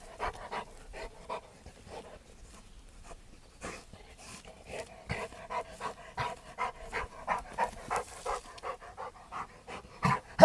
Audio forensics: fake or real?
real